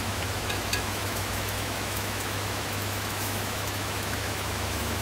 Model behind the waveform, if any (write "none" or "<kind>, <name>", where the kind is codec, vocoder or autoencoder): autoencoder, DAC-VAE